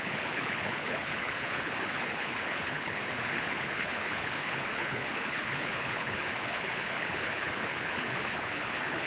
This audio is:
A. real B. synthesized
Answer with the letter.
B